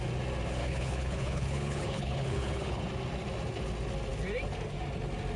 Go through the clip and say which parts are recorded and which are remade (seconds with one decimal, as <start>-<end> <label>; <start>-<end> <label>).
0.0-0.6 recorded; 0.6-2.8 remade; 2.8-5.4 recorded